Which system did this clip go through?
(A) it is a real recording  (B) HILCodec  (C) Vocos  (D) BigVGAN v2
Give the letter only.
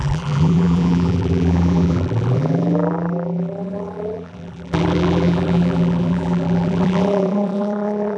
D